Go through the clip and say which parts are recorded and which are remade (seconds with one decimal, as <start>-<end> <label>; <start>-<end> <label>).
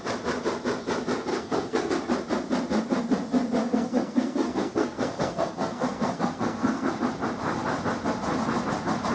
0.0-1.3 recorded; 1.3-1.9 remade; 1.9-3.6 recorded; 3.6-6.9 remade; 6.9-9.1 recorded